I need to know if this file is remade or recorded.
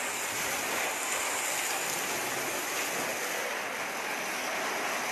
recorded